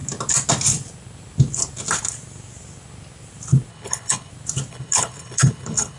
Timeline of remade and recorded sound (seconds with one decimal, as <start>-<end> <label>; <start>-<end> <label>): 0.0-3.7 recorded; 3.7-4.3 remade; 4.3-4.7 recorded; 4.7-6.0 remade